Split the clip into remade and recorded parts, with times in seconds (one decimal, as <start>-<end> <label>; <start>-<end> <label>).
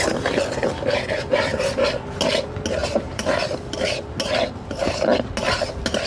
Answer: 0.0-1.5 recorded; 1.5-2.2 remade; 2.2-2.8 recorded; 2.8-4.0 remade; 4.0-6.1 recorded